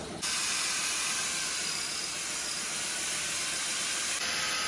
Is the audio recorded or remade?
recorded